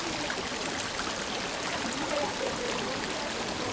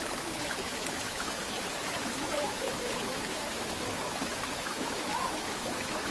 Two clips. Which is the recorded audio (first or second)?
first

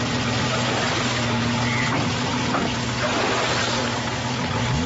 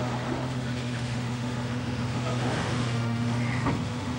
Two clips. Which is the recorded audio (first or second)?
first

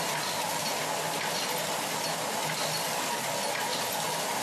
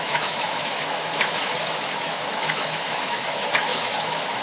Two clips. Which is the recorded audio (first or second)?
first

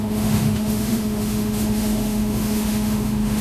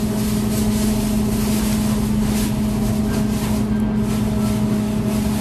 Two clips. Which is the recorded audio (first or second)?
second